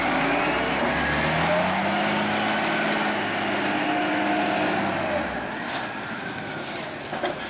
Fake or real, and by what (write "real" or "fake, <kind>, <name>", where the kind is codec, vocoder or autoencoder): real